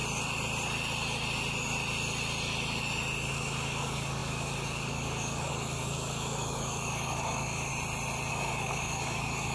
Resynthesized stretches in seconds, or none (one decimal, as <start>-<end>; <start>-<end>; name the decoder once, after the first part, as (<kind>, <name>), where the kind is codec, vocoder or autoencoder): 3.3-7.7 (codec, DAC); 8.3-9.5